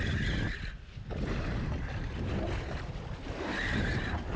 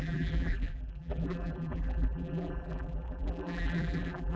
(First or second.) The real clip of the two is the first